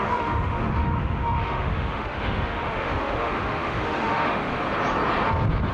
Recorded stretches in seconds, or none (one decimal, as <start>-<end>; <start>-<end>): 4.5-5.7